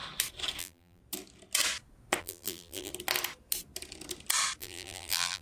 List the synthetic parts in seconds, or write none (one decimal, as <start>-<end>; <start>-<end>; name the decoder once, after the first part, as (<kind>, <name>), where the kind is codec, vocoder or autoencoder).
0.6-1.0 (vocoder, BigVGAN v2); 2.2-2.9; 4.6-5.4